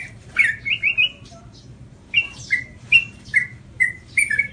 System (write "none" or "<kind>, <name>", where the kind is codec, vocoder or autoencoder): vocoder, BigVGAN v2